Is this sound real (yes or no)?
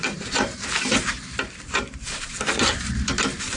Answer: no